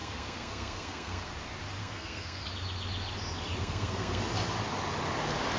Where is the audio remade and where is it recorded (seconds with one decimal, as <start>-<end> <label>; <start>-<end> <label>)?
0.0-1.3 remade; 1.3-1.8 recorded; 1.8-2.5 remade; 2.5-3.6 recorded; 3.6-4.2 remade; 4.2-5.6 recorded